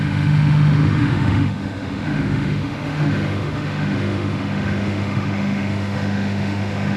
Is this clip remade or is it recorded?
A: remade